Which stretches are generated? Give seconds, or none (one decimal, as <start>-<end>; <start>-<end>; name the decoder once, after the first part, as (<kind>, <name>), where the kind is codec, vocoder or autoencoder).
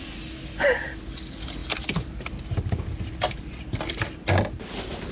none